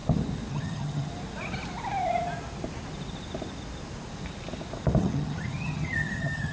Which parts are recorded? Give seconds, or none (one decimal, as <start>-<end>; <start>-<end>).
0.0-0.5; 1.1-5.0

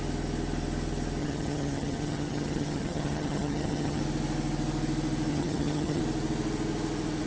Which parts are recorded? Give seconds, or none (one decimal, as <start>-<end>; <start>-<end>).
0.0-1.2; 4.0-5.3; 6.0-7.3

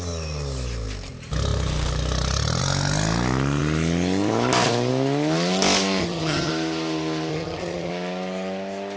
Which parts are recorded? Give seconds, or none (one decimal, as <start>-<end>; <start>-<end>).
0.0-6.0; 6.5-7.3; 7.9-9.0